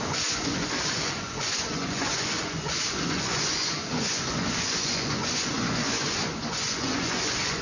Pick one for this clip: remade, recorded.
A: remade